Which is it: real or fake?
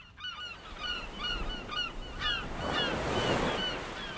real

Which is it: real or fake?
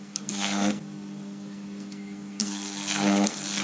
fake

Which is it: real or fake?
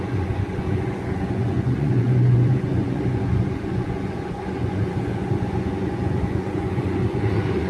fake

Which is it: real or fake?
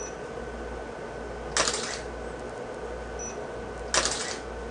real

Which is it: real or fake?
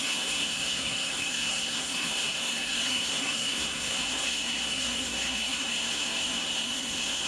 fake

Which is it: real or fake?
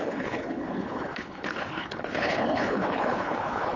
fake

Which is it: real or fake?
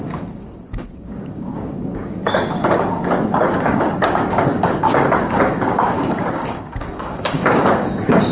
fake